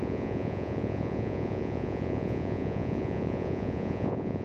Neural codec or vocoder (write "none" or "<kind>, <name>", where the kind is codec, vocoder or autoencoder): vocoder, Vocos